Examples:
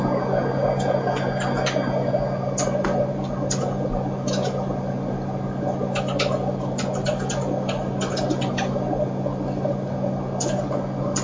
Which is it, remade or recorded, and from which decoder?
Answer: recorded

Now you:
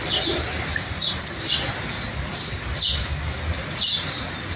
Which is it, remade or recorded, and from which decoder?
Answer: recorded